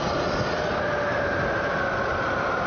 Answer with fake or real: real